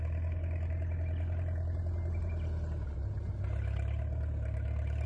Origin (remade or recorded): recorded